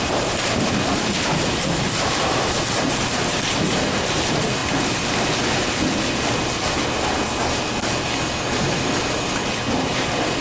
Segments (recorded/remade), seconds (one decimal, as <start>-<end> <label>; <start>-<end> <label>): 0.0-4.6 remade; 4.6-9.8 recorded; 9.8-10.4 remade